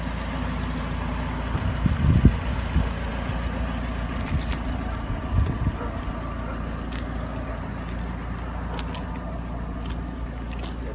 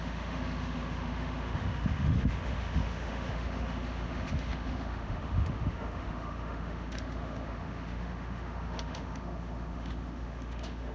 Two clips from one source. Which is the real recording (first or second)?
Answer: first